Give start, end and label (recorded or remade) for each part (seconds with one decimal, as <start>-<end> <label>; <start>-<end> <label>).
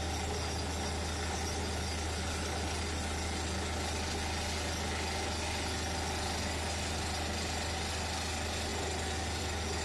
0.0-9.8 recorded